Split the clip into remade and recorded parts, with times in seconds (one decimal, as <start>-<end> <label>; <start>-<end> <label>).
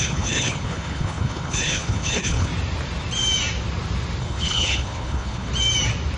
0.0-2.5 remade; 2.5-4.2 recorded; 4.2-5.5 remade; 5.5-6.2 recorded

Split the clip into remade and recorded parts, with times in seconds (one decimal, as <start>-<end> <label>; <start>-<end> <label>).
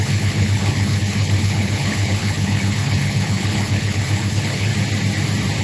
0.0-4.7 remade; 4.7-5.6 recorded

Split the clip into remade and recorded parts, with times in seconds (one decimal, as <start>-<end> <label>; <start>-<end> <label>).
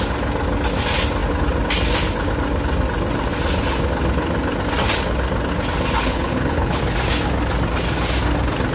0.0-6.0 recorded; 6.0-6.8 remade; 6.8-8.7 recorded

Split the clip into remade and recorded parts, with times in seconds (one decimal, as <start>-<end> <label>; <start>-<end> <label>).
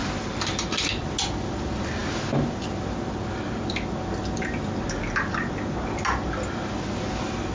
0.0-7.5 recorded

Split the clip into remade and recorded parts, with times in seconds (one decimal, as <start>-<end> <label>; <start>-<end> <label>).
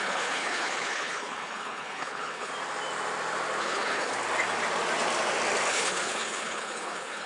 0.0-2.5 remade; 2.5-3.6 recorded; 3.6-4.1 remade; 4.1-5.7 recorded; 5.7-7.3 remade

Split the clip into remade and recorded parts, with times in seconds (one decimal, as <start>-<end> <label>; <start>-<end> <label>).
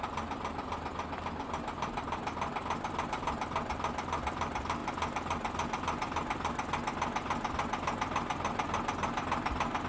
0.0-9.9 recorded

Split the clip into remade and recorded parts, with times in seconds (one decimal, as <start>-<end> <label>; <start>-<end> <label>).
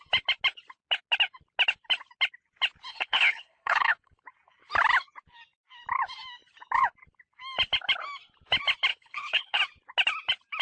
0.0-2.9 recorded; 2.9-4.2 remade; 4.2-8.9 recorded; 8.9-9.6 remade; 9.6-10.6 recorded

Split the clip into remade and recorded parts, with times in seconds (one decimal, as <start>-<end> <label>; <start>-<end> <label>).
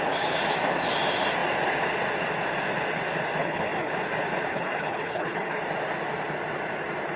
0.0-3.4 recorded; 3.4-3.9 remade; 3.9-4.5 recorded; 4.5-5.6 remade; 5.6-7.2 recorded